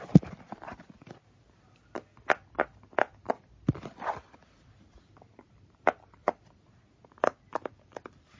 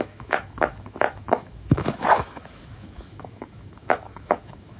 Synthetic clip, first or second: second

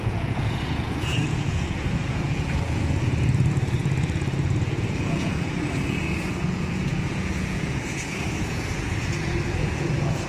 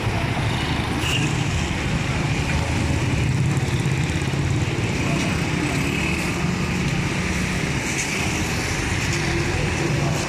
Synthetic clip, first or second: first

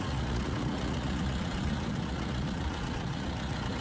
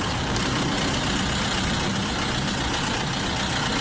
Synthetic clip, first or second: first